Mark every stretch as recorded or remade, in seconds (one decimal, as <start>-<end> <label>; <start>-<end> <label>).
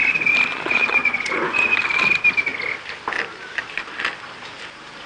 0.0-0.5 recorded; 0.5-1.8 remade; 1.8-5.1 recorded